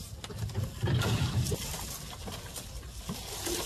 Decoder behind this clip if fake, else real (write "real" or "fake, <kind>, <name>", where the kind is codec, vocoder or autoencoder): real